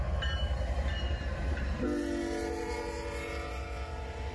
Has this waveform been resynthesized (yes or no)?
no